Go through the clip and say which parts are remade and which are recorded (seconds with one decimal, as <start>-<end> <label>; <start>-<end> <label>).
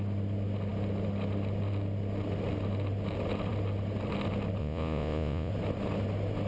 0.0-4.6 recorded; 4.6-5.5 remade; 5.5-6.5 recorded